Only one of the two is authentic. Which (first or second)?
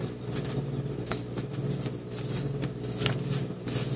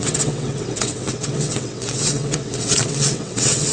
first